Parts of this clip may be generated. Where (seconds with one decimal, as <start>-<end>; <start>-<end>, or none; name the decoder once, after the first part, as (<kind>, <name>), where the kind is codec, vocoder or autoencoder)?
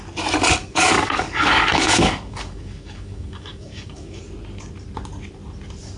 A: 0.6-4.2 (codec, DAC)